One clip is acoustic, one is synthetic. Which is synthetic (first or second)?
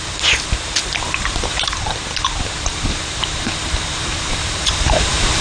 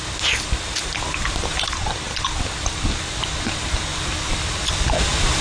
first